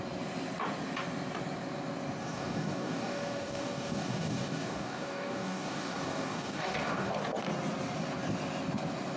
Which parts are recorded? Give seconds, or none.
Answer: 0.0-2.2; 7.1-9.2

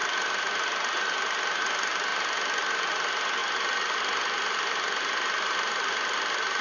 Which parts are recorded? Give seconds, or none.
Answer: 0.0-6.6

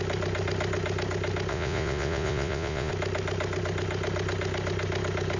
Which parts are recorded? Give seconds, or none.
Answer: 0.0-1.5; 2.9-5.4

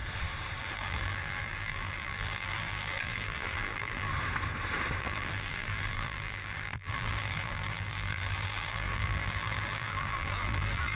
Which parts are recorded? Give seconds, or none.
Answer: 0.0-0.6; 4.1-5.0